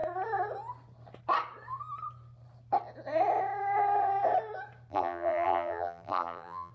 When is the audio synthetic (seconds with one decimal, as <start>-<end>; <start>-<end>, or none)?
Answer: 4.9-6.7